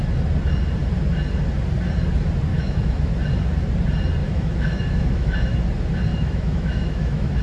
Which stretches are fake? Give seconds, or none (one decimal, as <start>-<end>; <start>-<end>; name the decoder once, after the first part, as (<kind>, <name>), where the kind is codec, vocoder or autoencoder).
2.5-3.1 (autoencoder, DAC-VAE); 4.2-5.6; 6.1-7.4